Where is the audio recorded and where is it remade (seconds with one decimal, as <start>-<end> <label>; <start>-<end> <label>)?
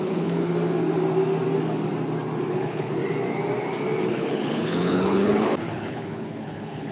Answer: 0.0-0.5 remade; 0.5-2.5 recorded; 2.5-3.0 remade; 3.0-4.1 recorded; 4.1-6.9 remade